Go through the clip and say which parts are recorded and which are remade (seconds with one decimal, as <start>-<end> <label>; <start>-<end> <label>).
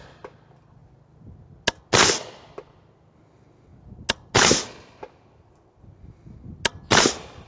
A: 0.0-7.5 recorded